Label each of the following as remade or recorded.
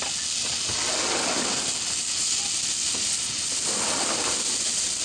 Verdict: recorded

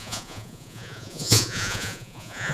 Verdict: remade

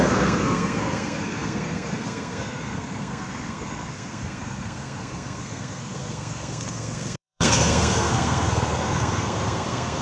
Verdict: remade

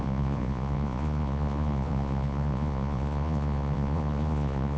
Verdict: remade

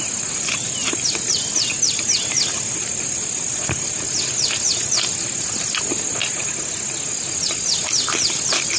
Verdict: recorded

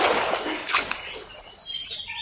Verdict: recorded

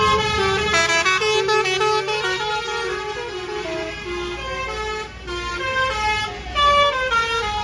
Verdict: recorded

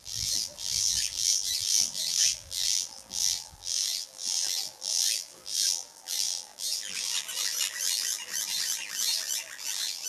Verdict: remade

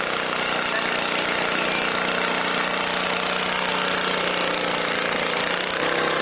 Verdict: recorded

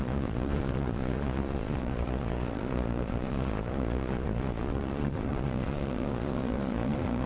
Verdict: remade